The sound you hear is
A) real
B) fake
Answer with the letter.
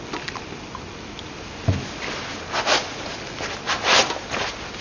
A